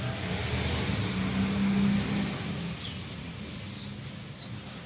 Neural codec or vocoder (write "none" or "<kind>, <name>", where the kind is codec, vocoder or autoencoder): none